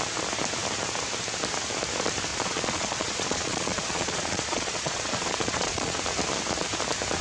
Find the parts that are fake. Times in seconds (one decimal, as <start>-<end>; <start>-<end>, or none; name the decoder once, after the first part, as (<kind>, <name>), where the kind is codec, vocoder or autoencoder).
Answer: 2.3-6.0 (vocoder, Vocos)